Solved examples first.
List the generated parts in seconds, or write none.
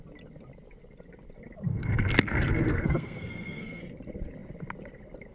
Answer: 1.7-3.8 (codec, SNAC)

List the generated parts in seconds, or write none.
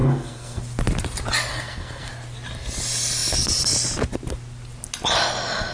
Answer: 0.0-0.6 (codec, SNAC); 1.5-2.1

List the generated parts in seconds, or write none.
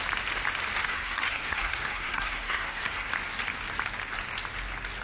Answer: 0.8-3.1 (codec, SNAC)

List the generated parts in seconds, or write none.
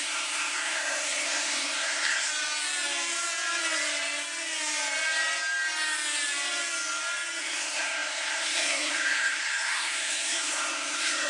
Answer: 0.0-2.3 (codec, SNAC); 7.4-11.3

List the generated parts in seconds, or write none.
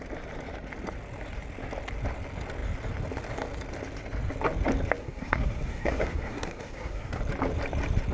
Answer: 5.0-7.2 (codec, SNAC)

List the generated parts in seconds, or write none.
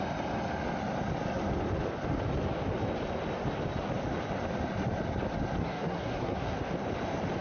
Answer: 5.6-6.6 (codec, SNAC)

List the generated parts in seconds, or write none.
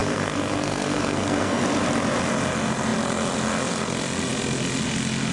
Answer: 0.0-1.6 (codec, SNAC)